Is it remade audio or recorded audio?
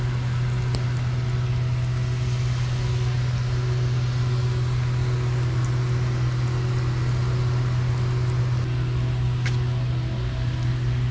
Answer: recorded